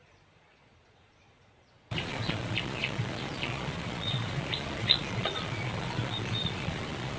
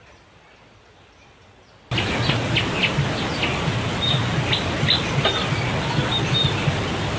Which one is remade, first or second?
first